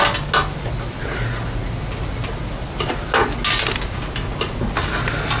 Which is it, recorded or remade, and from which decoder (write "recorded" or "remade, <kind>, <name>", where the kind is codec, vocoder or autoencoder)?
recorded